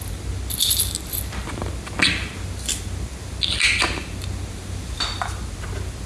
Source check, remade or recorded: recorded